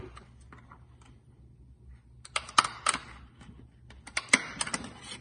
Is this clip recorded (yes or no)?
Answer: yes